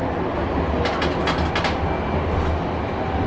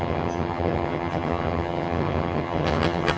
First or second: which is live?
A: first